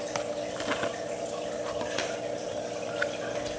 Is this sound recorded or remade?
recorded